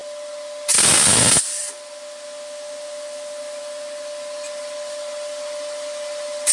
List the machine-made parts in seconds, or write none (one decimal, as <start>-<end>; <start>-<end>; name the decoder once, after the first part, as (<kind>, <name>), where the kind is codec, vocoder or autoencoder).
none